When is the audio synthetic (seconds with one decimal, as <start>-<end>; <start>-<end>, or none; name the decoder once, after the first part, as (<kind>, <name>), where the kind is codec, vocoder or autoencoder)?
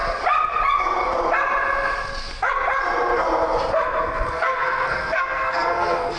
3.7-6.2 (codec, SNAC)